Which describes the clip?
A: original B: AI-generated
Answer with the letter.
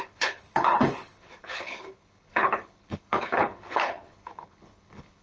B